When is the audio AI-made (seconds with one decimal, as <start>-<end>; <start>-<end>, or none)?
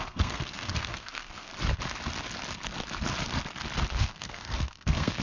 0.0-1.5; 3.9-5.2